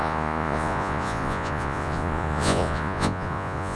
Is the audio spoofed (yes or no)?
yes